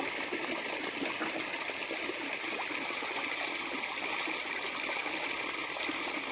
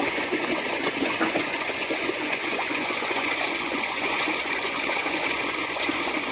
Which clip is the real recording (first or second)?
first